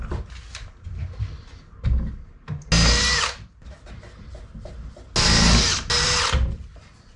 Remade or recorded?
recorded